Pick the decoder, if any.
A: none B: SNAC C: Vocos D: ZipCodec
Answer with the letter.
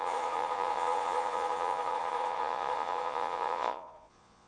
C